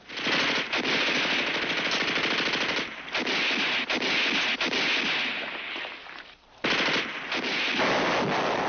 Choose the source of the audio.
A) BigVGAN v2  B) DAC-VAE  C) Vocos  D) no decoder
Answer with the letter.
D